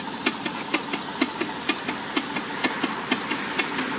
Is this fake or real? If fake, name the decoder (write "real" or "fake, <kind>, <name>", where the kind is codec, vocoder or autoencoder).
real